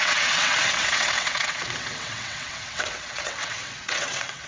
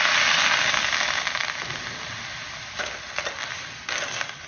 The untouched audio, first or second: second